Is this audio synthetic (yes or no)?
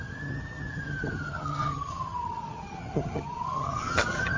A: yes